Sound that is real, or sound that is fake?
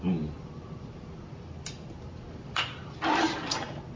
real